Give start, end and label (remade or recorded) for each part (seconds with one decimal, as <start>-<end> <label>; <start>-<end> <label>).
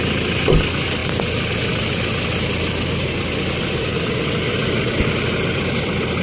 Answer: 0.0-6.2 recorded